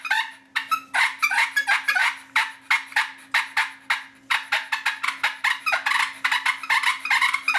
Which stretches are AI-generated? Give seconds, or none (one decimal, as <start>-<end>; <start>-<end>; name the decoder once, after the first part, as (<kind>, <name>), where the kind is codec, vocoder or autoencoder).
none